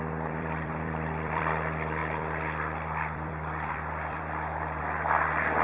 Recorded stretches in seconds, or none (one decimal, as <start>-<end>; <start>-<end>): none